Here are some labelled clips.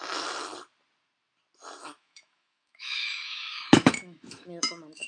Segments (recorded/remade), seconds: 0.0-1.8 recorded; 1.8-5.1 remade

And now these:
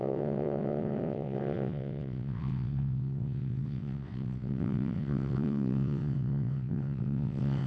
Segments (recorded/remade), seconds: 0.0-7.7 remade

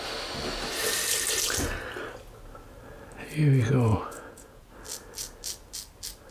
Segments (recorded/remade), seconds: 0.0-3.9 recorded; 3.9-4.7 remade; 4.7-6.3 recorded

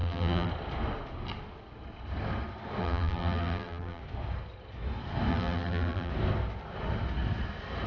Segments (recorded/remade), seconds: 0.0-0.5 remade; 0.5-2.8 recorded; 2.8-4.0 remade; 4.0-5.3 recorded; 5.3-6.1 remade; 6.1-7.9 recorded

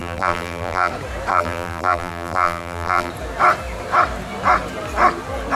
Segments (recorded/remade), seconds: 0.0-0.9 remade; 0.9-1.3 recorded; 1.3-3.1 remade; 3.1-5.5 recorded

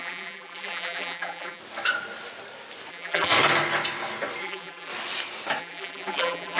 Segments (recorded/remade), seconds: 0.0-1.6 remade; 1.6-2.9 recorded; 2.9-3.3 remade; 3.3-4.4 recorded; 4.4-4.9 remade; 4.9-5.6 recorded; 5.6-6.6 remade

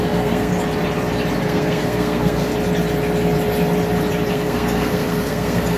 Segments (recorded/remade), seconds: 0.0-0.5 remade; 0.5-1.4 recorded; 1.4-2.5 remade; 2.5-4.3 recorded; 4.3-5.8 remade

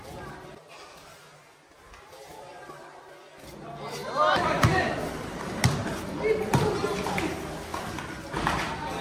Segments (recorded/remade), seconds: 0.0-4.0 recorded; 4.0-7.2 remade; 7.2-7.7 recorded; 7.7-8.6 remade; 8.6-9.0 recorded